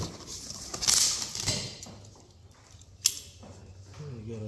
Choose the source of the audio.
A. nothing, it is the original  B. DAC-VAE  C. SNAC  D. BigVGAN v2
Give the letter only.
A